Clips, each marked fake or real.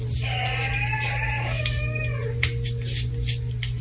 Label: real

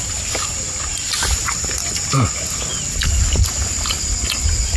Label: real